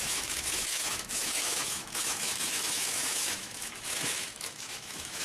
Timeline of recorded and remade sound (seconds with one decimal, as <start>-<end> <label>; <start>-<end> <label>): 0.0-5.2 remade